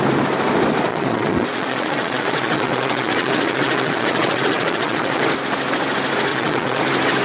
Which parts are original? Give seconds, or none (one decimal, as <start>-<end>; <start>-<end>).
0.0-0.9; 5.2-6.3; 6.8-7.2